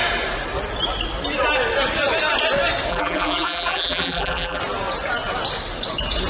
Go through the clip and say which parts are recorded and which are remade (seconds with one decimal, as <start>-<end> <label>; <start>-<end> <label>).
0.0-2.9 recorded; 2.9-4.6 remade; 4.6-6.3 recorded